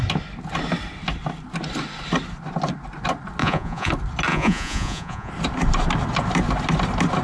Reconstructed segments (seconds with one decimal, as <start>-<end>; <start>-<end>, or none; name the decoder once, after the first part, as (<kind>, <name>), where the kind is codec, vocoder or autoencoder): 3.4-3.9 (vocoder, Vocos); 4.3-5.3